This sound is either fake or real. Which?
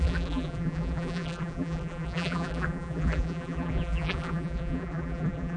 fake